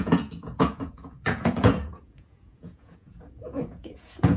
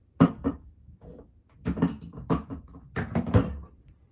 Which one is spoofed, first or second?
first